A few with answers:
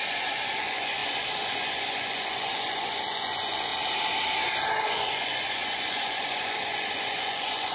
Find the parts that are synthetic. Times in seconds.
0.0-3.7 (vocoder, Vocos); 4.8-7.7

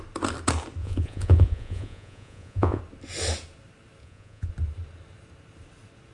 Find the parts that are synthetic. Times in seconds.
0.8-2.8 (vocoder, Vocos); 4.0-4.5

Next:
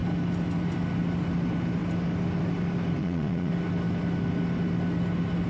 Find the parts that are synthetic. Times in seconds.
3.0-3.5 (vocoder, Vocos)

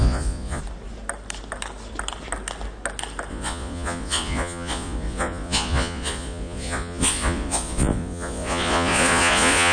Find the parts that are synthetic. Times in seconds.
0.0-0.6 (vocoder, Vocos); 3.3-9.7

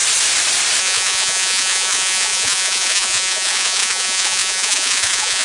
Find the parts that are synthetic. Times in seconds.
0.8-5.4 (vocoder, Vocos)